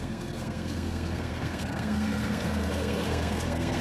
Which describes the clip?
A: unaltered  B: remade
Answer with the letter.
B